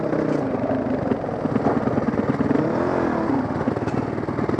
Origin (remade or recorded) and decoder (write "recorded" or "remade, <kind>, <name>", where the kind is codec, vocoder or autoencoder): recorded